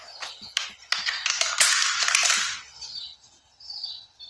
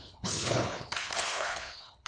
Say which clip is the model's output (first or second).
second